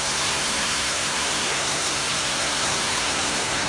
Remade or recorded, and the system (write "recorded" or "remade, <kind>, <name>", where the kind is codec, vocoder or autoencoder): remade, codec, SNAC